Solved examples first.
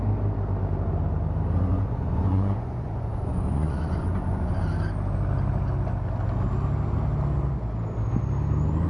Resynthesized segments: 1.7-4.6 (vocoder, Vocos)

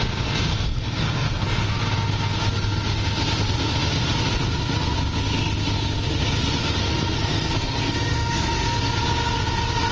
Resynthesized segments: 0.5-1.7 (codec, SNAC); 6.6-8.8

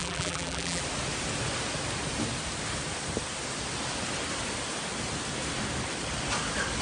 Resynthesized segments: 0.0-0.8 (vocoder, BigVGAN v2)

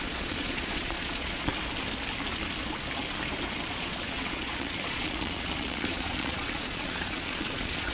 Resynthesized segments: 0.0-1.5 (vocoder, Vocos); 3.7-7.9

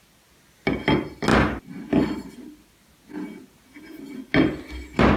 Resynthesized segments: none

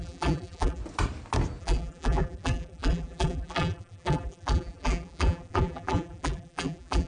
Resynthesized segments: 0.0-0.8 (vocoder, BigVGAN v2); 1.6-7.1

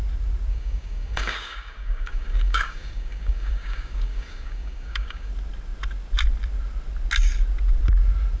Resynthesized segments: 0.5-5.3 (codec, DAC)